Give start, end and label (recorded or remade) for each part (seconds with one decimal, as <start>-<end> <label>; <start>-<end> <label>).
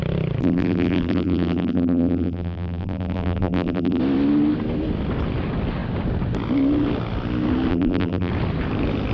0.0-0.4 recorded; 0.4-4.0 remade; 4.0-7.7 recorded; 7.7-8.3 remade; 8.3-9.1 recorded